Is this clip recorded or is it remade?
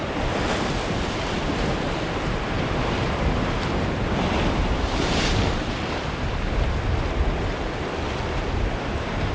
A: recorded